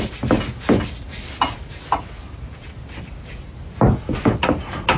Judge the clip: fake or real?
real